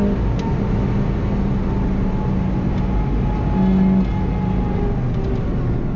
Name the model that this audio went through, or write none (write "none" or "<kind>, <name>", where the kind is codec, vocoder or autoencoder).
none